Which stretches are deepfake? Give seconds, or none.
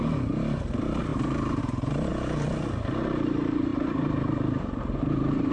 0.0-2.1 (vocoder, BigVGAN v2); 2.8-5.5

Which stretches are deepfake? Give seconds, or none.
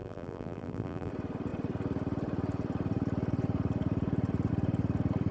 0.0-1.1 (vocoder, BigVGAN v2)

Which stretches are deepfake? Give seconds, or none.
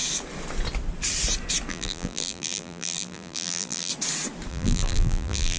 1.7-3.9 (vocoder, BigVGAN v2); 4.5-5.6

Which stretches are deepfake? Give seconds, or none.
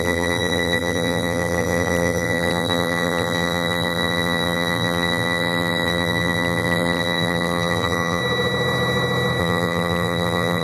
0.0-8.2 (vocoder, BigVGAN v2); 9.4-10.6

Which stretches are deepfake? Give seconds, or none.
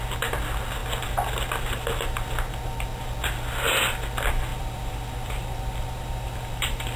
4.5-7.0 (vocoder, BigVGAN v2)